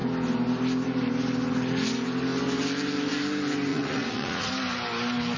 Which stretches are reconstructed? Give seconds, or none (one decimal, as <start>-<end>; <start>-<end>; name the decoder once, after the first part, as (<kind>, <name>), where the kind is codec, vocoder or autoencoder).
3.7-4.5 (vocoder, Vocos)